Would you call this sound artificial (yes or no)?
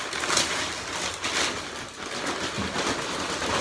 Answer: no